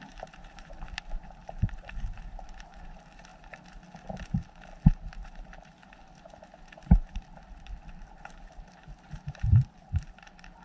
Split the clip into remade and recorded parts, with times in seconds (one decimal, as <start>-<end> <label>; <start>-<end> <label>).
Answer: 0.0-3.3 remade; 3.3-4.9 recorded; 4.9-10.6 remade